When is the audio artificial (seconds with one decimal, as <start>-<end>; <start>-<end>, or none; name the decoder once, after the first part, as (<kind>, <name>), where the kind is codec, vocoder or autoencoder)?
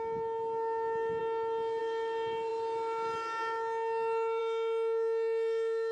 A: none